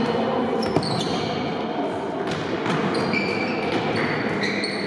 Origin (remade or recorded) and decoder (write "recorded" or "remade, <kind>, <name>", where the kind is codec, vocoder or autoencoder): recorded